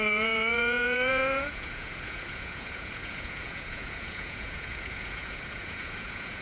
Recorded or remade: remade